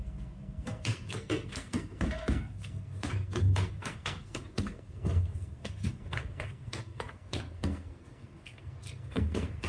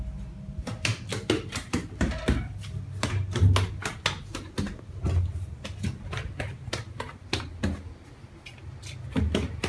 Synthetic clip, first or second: first